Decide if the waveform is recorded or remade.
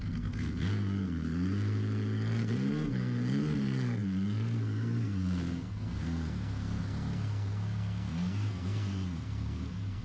remade